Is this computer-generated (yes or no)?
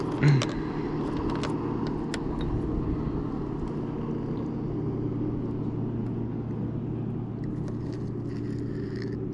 no